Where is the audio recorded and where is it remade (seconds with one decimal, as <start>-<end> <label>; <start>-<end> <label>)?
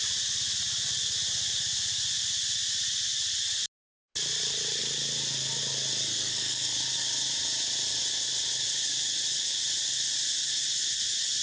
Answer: 0.0-6.1 recorded; 6.1-6.7 remade; 6.7-11.4 recorded